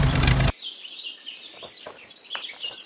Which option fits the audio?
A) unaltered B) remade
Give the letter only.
A